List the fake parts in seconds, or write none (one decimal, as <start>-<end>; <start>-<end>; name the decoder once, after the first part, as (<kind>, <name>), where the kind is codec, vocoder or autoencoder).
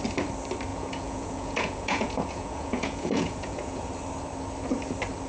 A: 0.7-3.9 (vocoder, Vocos)